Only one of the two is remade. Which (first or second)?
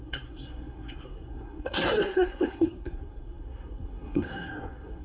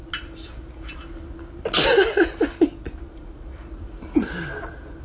first